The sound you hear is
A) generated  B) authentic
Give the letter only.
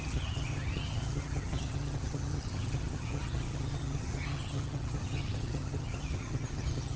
A